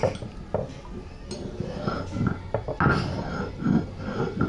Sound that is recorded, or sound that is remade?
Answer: recorded